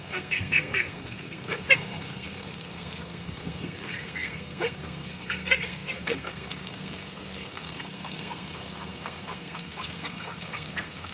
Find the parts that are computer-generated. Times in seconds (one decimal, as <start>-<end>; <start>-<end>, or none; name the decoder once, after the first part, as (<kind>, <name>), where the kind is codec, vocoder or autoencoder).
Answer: 0.0-11.1 (codec, SNAC)